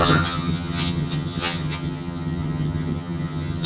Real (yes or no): no